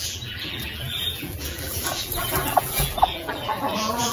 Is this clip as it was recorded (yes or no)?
no